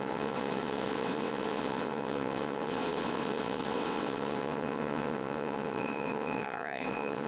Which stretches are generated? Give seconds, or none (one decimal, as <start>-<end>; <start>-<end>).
0.0-7.3